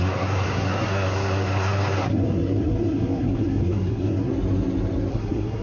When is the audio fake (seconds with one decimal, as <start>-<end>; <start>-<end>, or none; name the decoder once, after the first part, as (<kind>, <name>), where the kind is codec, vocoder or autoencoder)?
0.0-4.3 (codec, SNAC); 5.1-5.6